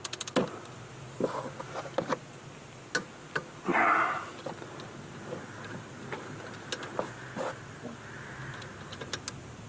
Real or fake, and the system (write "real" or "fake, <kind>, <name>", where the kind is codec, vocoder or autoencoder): real